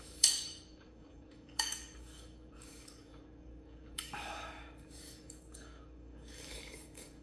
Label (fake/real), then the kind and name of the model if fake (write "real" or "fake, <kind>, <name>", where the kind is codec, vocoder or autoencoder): fake, codec, DAC